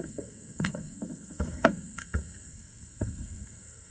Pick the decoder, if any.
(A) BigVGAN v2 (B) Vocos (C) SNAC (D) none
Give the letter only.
C